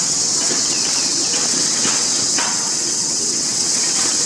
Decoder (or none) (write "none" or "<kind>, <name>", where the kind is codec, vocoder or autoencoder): vocoder, WaveNeXt